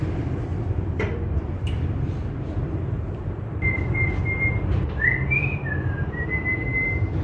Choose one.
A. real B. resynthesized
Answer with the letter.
B